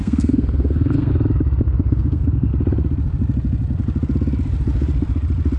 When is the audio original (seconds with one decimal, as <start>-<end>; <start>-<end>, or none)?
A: 1.1-1.6; 2.5-5.6